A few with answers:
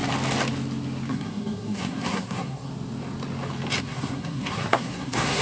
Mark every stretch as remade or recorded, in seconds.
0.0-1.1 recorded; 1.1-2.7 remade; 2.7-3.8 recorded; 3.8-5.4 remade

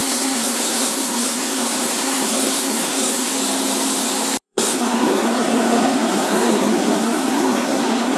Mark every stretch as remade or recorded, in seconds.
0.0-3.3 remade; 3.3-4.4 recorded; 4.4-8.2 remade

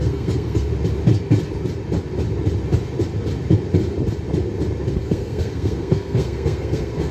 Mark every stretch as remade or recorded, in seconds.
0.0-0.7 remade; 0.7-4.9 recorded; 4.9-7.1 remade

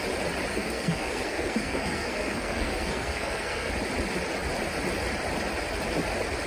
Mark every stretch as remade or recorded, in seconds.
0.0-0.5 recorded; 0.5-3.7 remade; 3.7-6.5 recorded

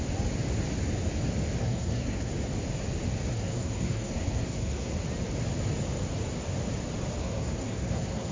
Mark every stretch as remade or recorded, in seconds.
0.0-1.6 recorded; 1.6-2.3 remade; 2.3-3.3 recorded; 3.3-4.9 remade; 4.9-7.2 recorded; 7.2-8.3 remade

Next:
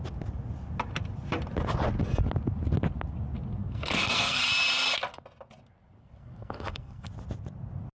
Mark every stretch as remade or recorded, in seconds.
0.0-3.6 recorded; 3.6-4.4 remade; 4.4-6.0 recorded; 6.0-7.1 remade; 7.1-8.0 recorded

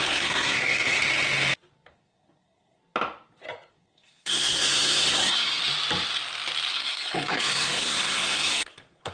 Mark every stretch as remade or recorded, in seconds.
0.0-1.0 remade; 1.0-1.9 recorded; 1.9-2.8 remade; 2.8-3.7 recorded; 3.7-5.6 remade; 5.6-6.7 recorded; 6.7-9.1 remade

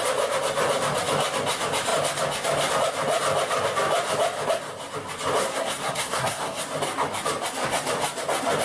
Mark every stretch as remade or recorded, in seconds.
0.0-5.4 recorded; 5.4-6.6 remade; 6.6-8.6 recorded